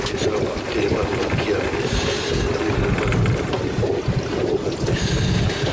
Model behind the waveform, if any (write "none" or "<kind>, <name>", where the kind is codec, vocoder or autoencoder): none